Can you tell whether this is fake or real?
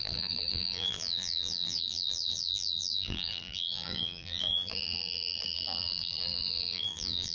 fake